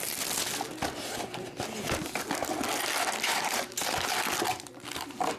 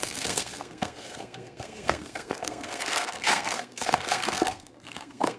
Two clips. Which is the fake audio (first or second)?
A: second